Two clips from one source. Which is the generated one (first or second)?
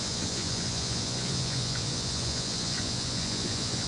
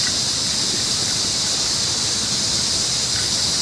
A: first